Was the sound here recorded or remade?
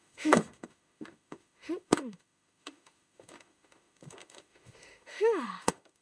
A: remade